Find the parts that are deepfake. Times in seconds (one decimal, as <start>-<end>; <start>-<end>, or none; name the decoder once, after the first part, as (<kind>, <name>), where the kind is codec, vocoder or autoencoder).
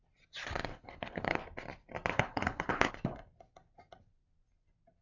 0.7-1.4 (codec, HILCodec); 2.1-2.9